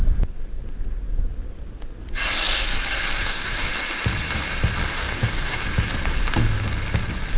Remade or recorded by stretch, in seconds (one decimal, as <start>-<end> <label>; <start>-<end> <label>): 0.0-3.2 recorded; 3.2-3.7 remade; 3.7-4.9 recorded; 4.9-5.6 remade; 5.6-7.4 recorded